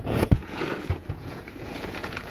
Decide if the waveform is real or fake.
fake